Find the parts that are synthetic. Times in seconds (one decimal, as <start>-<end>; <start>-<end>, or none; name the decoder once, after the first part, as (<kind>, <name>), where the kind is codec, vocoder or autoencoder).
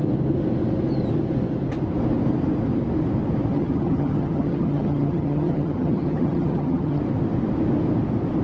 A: 3.5-7.0 (vocoder, HiFi-GAN)